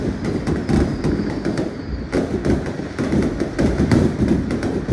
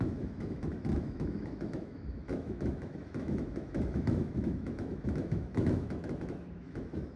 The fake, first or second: second